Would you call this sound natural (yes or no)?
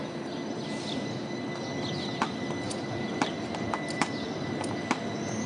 yes